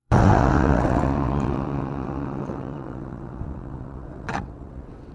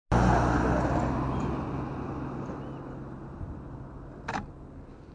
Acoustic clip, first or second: second